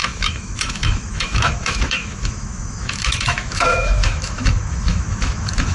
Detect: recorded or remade remade